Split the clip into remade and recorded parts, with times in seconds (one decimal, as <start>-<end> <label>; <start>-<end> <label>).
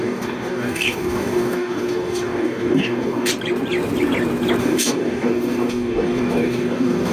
0.0-3.3 remade; 3.3-4.6 recorded; 4.6-7.1 remade